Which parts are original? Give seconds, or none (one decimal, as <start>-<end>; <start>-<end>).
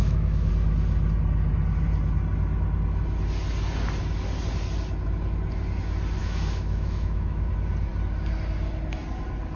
0.5-6.2; 7.5-9.6